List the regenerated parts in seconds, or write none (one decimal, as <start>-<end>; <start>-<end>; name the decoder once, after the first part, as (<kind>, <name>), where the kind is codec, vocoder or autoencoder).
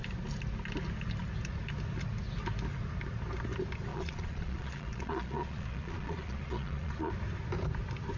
3.9-7.1 (vocoder, Vocos)